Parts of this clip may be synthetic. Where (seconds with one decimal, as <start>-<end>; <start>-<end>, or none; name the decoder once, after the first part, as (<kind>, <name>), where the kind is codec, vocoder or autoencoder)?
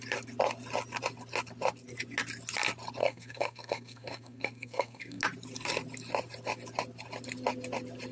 3.0-5.2 (codec, SNAC)